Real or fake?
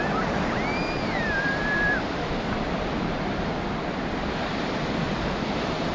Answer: real